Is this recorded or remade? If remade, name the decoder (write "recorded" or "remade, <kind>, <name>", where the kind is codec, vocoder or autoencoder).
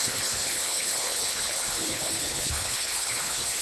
remade, codec, HILCodec